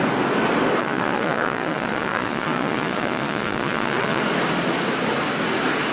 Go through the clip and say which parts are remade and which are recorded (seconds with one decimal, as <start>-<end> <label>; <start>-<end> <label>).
0.0-0.8 recorded; 0.8-4.2 remade; 4.2-5.9 recorded